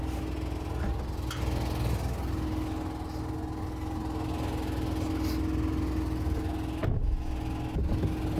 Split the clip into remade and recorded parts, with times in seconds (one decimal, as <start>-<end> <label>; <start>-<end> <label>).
0.0-8.4 recorded